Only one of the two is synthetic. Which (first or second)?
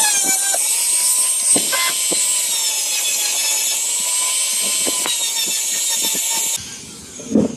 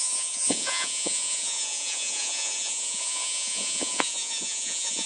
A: second